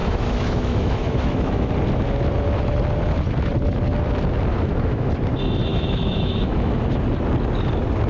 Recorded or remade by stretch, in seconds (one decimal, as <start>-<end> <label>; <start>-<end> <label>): 0.0-1.7 remade; 1.7-4.5 recorded; 4.5-5.1 remade; 5.1-5.7 recorded; 5.7-6.7 remade; 6.7-8.1 recorded